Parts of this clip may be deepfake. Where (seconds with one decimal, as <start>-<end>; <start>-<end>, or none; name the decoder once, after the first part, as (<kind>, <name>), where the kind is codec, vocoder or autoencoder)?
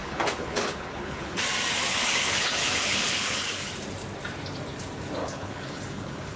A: 0.0-1.4 (codec, HILCodec); 1.9-3.7; 5.2-6.4